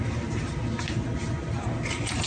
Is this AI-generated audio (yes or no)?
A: no